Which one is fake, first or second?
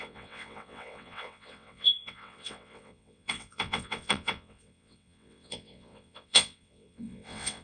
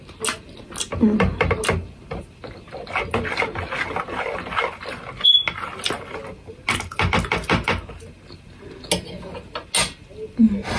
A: first